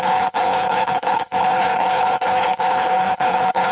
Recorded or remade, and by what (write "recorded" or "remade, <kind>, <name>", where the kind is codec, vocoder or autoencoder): remade, codec, HILCodec